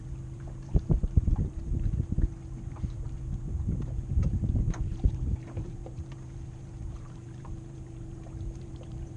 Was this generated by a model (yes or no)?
yes